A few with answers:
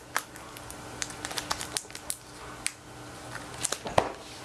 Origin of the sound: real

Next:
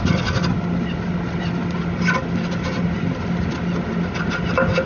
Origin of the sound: real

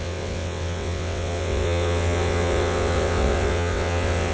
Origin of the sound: fake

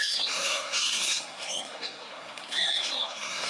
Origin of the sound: fake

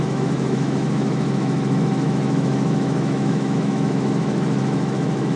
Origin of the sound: fake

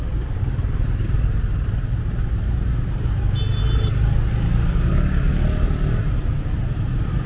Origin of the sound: real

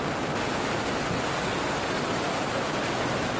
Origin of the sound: real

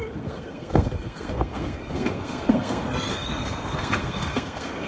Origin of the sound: fake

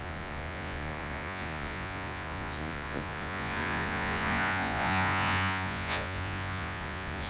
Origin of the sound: fake